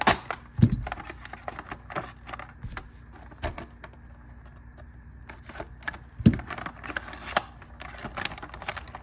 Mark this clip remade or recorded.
recorded